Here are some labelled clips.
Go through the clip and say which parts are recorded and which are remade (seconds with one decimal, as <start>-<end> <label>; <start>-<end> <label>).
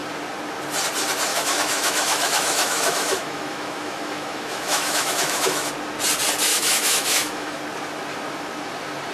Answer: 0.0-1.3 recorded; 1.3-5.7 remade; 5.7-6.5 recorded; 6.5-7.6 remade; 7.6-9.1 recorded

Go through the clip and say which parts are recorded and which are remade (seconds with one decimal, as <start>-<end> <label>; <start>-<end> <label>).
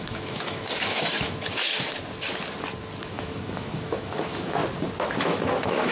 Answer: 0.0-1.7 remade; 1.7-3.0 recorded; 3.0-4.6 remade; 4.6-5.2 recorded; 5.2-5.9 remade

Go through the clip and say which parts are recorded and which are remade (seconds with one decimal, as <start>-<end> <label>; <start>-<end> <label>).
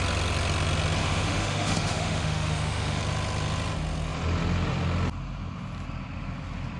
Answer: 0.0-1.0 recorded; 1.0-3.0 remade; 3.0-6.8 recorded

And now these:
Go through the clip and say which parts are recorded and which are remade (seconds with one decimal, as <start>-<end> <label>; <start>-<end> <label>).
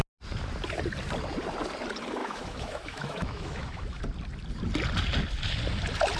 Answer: 0.0-2.2 recorded; 2.2-4.0 remade; 4.0-6.2 recorded